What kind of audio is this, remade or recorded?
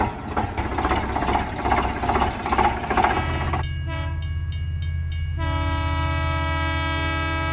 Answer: recorded